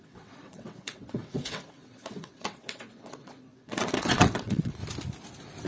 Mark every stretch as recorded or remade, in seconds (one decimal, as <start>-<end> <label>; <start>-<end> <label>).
0.0-4.8 remade; 4.8-5.7 recorded